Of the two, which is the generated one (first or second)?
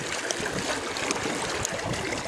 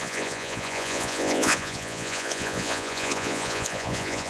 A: second